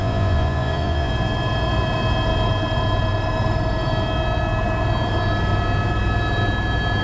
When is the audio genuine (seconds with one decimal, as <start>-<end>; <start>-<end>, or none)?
1.1-7.0